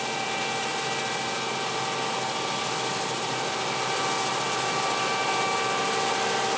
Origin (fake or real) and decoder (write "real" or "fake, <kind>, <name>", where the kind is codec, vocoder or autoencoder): real